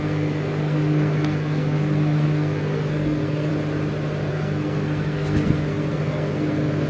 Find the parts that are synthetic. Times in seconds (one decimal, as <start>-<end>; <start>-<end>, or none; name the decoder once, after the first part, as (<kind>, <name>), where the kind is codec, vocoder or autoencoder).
0.0-3.5 (codec, SNAC); 4.3-6.9